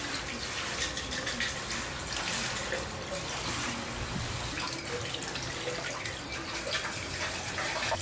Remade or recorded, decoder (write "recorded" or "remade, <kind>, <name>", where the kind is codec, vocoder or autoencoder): recorded